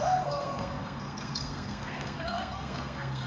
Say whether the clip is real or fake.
fake